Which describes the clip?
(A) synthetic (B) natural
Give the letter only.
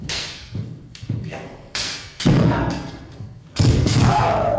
A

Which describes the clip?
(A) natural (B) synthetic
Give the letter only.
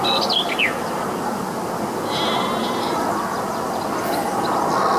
A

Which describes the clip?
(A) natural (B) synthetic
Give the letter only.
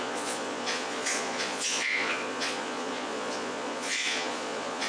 B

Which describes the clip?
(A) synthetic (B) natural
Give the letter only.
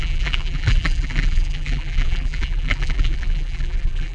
A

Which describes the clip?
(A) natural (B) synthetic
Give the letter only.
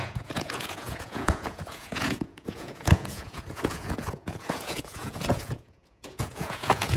B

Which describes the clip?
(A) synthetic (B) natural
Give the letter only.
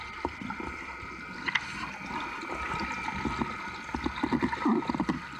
B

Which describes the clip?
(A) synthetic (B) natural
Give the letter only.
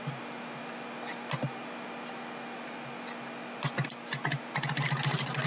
B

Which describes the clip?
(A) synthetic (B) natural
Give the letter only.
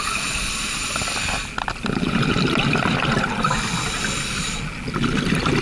B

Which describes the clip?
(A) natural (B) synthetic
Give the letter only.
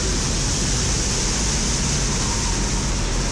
A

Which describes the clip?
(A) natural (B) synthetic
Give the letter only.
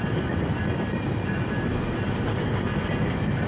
A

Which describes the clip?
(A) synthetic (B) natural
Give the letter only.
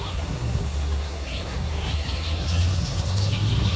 A